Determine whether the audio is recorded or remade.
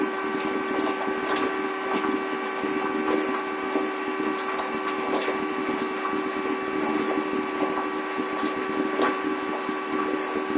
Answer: recorded